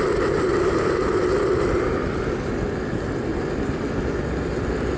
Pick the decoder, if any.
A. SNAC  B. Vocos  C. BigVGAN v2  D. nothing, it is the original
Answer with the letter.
D